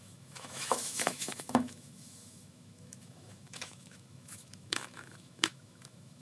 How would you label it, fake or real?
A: fake